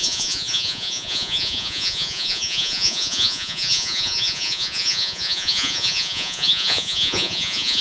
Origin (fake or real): fake